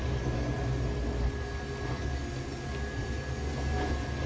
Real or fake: real